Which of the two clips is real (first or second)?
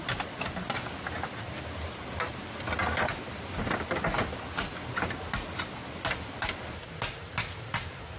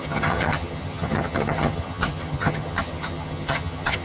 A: first